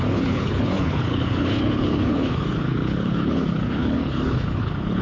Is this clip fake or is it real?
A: fake